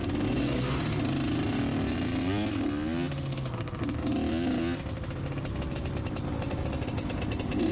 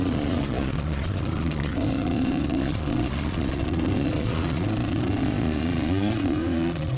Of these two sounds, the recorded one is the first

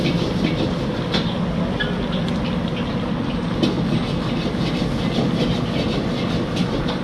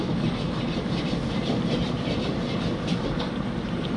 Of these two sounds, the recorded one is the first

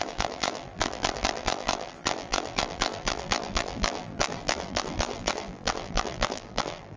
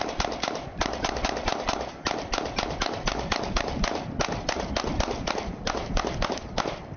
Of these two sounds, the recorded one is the second